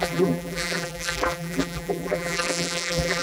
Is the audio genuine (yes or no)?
no